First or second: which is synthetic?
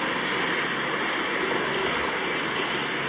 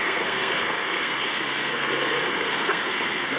second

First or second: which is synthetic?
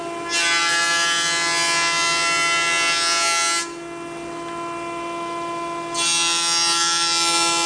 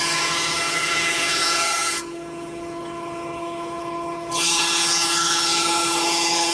second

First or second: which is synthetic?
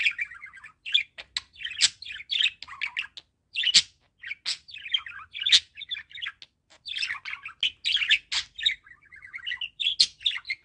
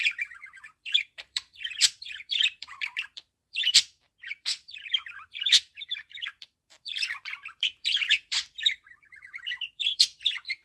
second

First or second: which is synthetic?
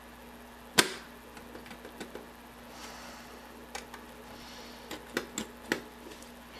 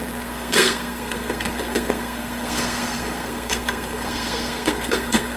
second